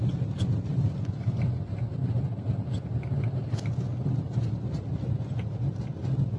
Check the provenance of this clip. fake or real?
real